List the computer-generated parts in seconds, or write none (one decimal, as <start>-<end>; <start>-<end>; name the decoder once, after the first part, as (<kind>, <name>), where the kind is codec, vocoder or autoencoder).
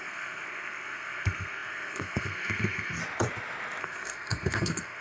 0.0-3.0 (codec, SNAC); 3.8-5.0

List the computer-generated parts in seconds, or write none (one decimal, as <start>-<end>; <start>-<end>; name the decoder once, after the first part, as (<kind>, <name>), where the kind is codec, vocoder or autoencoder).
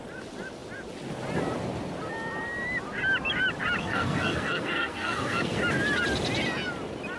3.8-5.6 (codec, SNAC)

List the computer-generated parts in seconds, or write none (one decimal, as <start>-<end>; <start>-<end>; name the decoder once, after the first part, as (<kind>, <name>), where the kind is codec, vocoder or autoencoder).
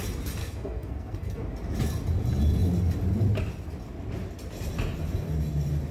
0.4-1.4 (codec, SNAC)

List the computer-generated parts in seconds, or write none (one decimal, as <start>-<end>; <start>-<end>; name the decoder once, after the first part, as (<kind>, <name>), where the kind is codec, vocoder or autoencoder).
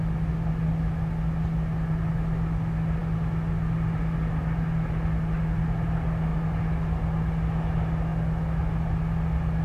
none